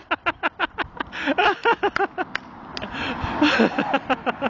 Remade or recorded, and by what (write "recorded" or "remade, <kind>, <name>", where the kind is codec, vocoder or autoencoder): recorded